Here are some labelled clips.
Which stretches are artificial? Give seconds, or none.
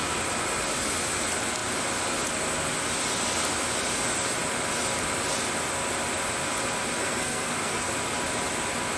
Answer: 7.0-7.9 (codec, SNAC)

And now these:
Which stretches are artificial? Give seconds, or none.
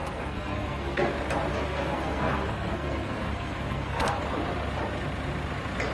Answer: 0.0-1.1 (codec, SNAC); 1.5-4.2